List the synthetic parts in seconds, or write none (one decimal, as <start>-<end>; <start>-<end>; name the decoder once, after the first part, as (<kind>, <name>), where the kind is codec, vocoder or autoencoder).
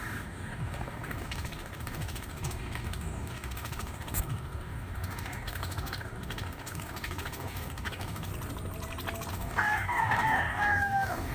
0.0-8.3 (codec, DAC); 9.3-11.3